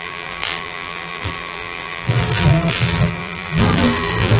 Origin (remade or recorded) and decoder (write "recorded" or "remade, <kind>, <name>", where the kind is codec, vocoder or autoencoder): remade, vocoder, BigVGAN v2